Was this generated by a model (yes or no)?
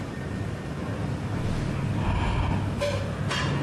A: no